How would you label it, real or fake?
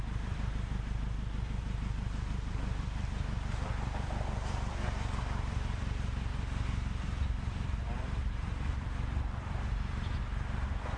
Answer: fake